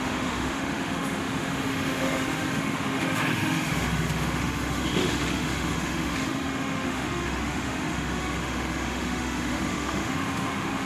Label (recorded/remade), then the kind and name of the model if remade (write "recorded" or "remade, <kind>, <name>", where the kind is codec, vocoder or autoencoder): remade, autoencoder, DAC-VAE